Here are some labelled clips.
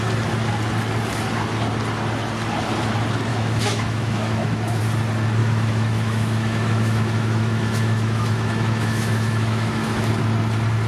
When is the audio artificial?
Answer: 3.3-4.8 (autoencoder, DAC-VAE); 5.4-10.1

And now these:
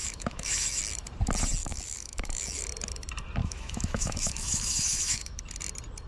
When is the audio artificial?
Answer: 0.0-0.8 (autoencoder, DAC-VAE); 1.6-2.6; 3.4-5.4

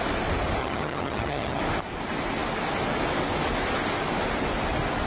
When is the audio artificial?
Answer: 0.6-1.6 (vocoder, HiFi-GAN)

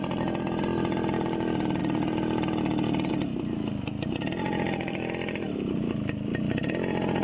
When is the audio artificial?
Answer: none